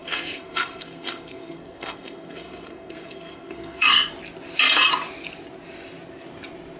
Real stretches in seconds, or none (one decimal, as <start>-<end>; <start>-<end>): 4.1-6.8